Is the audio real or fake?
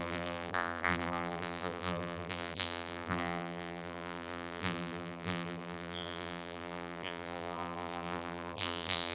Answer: fake